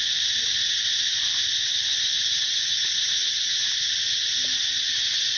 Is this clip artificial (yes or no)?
no